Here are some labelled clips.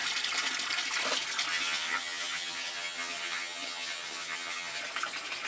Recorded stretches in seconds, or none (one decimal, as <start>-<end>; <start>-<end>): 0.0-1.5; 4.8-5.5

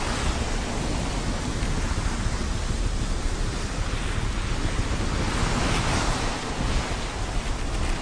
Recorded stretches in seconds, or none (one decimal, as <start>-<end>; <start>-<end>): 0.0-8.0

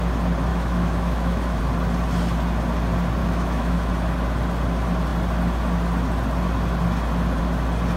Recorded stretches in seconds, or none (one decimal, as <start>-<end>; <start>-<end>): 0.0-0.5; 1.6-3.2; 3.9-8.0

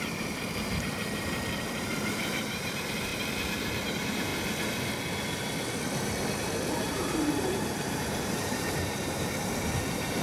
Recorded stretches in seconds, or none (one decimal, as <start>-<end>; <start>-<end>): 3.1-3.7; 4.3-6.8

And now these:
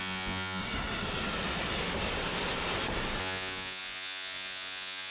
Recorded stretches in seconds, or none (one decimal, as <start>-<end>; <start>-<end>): 0.6-3.2

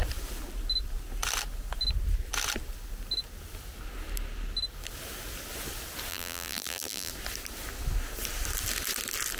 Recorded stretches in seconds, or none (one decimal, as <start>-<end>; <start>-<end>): 0.0-6.1; 7.1-9.4

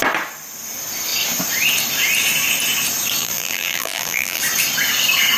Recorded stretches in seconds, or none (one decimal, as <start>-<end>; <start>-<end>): 0.0-3.2; 4.4-5.4

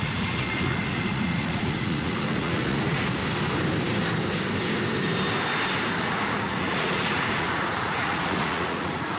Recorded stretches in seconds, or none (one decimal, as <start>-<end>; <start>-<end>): 3.2-6.0